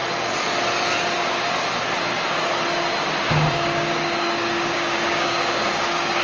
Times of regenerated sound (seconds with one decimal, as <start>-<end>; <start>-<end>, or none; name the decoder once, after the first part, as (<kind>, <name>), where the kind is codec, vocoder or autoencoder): 3.2-6.2 (codec, DAC)